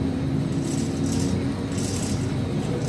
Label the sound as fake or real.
real